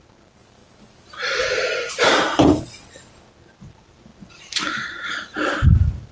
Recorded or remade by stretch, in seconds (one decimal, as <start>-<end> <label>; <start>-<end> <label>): 0.0-6.1 remade